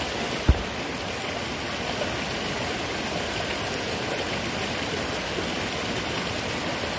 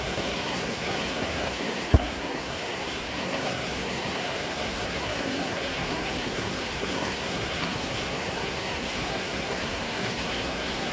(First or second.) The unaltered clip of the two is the first